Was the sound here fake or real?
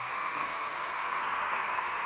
fake